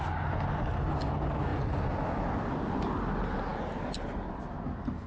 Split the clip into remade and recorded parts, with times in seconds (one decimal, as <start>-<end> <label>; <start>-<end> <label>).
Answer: 0.0-5.1 recorded